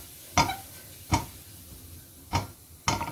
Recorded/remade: recorded